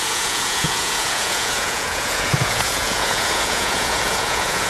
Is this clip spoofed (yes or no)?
yes